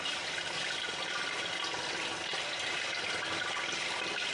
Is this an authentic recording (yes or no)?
yes